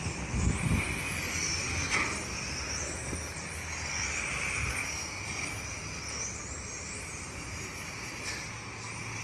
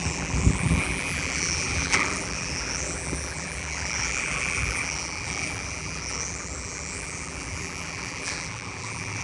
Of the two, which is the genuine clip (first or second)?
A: first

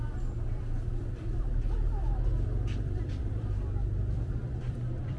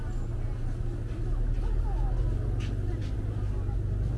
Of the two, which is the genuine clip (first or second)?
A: second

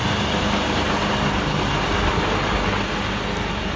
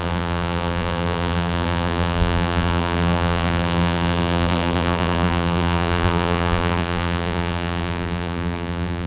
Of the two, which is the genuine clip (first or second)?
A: first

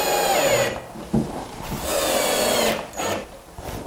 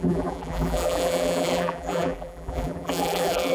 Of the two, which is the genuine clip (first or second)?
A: first